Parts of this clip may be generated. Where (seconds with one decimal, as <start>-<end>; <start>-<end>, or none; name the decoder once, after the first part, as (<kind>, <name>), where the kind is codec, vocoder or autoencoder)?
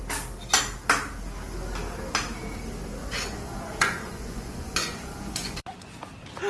3.0-5.9 (vocoder, Vocos)